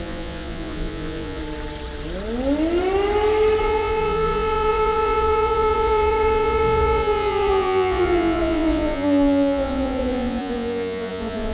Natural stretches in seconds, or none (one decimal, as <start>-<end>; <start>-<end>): 1.4-3.6